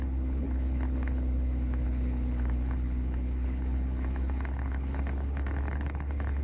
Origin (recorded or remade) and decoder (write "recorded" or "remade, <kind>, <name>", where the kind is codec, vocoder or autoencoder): remade, codec, HILCodec